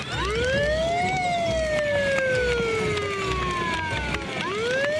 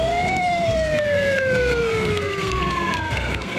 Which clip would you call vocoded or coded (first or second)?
second